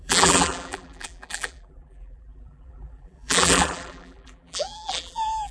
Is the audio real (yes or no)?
no